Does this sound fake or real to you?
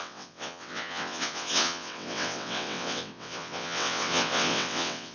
fake